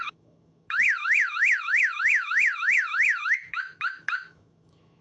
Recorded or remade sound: remade